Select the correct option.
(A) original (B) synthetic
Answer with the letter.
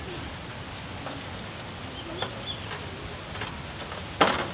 A